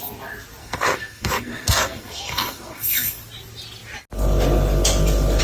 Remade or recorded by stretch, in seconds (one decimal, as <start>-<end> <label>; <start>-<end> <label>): 0.0-0.6 recorded; 0.6-3.2 remade; 3.2-5.4 recorded